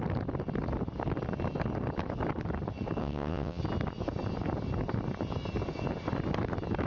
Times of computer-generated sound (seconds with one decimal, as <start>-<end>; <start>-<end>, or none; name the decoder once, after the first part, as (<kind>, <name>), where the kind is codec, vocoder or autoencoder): 3.0-3.6 (vocoder, WaveNeXt)